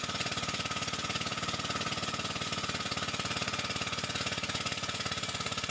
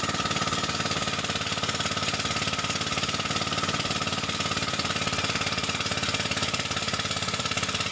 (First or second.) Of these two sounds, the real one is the second